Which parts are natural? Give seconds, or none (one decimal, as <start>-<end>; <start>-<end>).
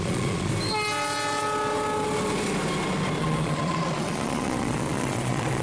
0.5-3.2